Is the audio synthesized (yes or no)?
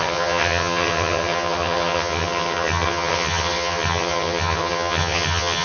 yes